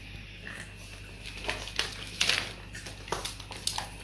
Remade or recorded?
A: recorded